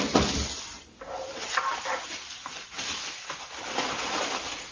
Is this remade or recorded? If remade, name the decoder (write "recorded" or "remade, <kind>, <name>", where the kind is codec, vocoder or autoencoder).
recorded